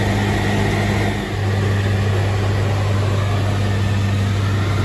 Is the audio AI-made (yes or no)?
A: no